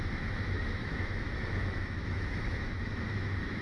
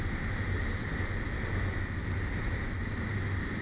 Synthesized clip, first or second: first